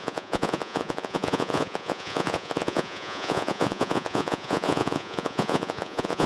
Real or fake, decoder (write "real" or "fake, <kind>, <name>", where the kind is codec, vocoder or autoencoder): fake, vocoder, Vocos